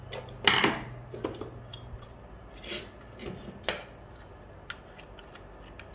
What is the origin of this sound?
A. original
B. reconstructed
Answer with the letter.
A